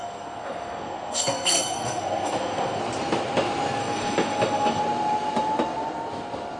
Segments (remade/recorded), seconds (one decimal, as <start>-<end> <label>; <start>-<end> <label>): 0.0-2.8 remade; 2.8-3.8 recorded; 3.8-4.8 remade; 4.8-6.6 recorded